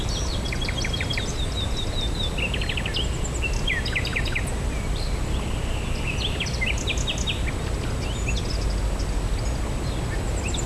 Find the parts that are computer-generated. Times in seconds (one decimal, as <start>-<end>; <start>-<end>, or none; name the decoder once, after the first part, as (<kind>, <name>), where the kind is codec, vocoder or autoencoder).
none